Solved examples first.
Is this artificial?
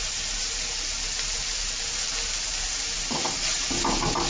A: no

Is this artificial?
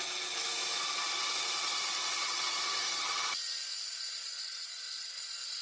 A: no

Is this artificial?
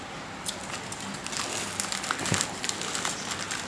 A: no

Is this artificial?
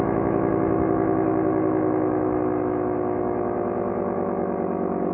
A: yes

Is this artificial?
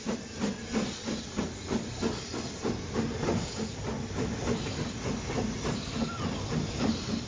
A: no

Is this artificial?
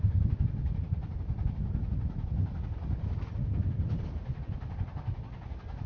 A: no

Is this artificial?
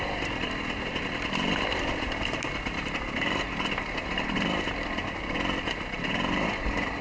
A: no